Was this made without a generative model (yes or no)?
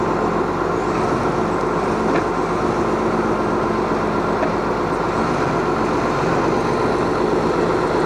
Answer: yes